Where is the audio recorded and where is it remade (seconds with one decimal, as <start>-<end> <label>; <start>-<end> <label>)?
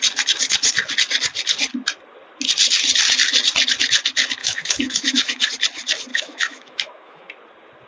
0.0-4.4 recorded; 4.4-5.5 remade; 5.5-6.1 recorded; 6.1-7.3 remade; 7.3-7.9 recorded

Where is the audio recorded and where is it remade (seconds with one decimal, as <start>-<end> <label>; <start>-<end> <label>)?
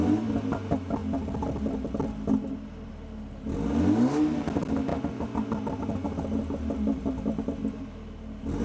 0.0-8.6 recorded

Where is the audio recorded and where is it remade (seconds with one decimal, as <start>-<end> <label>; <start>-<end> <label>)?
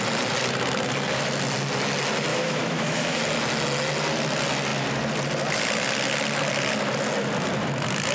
0.0-2.3 recorded; 2.3-3.2 remade; 3.2-8.1 recorded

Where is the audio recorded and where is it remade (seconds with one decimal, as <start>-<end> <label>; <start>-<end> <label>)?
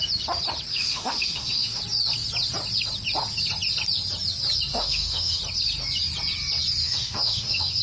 0.0-0.7 recorded; 0.7-1.8 remade; 1.8-4.7 recorded; 4.7-5.4 remade; 5.4-6.8 recorded; 6.8-7.8 remade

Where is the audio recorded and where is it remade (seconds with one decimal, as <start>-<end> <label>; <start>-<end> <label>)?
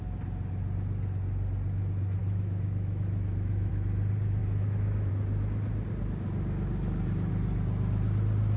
0.0-2.2 recorded; 2.2-3.7 remade; 3.7-4.4 recorded; 4.4-5.1 remade; 5.1-8.6 recorded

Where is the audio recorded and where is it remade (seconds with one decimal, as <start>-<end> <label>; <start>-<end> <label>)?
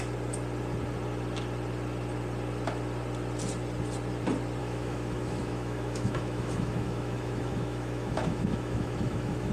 0.0-4.6 recorded; 4.6-9.5 remade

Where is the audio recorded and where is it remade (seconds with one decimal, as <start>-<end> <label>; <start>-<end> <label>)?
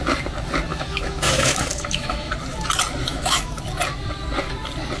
0.0-0.7 recorded; 0.7-2.3 remade; 2.3-3.1 recorded; 3.1-3.6 remade; 3.6-5.0 recorded